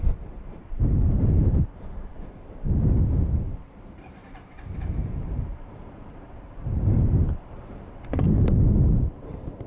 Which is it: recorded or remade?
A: remade